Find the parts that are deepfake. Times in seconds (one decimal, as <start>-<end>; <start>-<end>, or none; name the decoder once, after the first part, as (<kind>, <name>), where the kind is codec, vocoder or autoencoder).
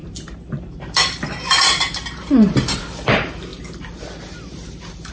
0.0-3.1 (vocoder, BigVGAN v2); 3.5-5.1